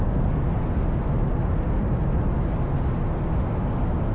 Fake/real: real